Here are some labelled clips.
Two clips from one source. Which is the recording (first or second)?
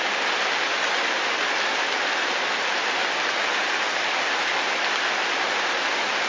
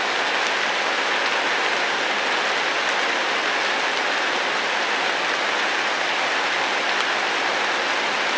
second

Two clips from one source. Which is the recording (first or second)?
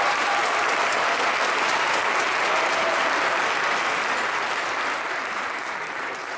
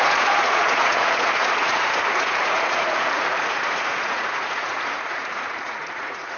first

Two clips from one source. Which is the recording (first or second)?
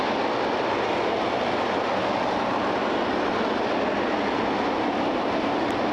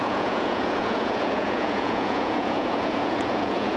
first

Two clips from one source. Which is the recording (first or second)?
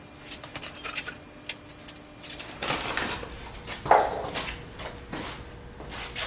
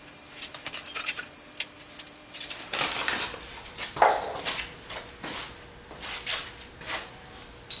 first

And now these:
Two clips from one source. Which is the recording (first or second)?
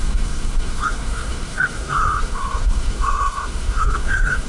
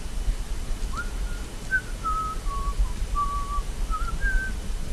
second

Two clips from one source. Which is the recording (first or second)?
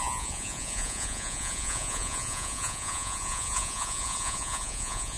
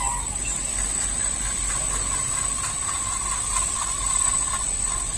second